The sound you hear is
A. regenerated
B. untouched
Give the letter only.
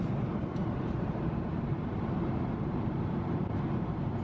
A